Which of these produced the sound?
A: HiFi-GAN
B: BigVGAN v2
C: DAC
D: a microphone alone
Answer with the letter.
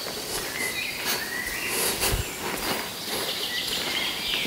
D